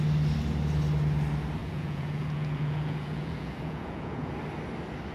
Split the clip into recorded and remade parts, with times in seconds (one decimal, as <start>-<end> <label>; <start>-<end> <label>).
0.0-1.6 recorded; 1.6-4.3 remade; 4.3-5.1 recorded